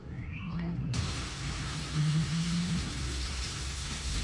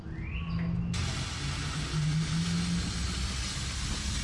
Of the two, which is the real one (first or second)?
second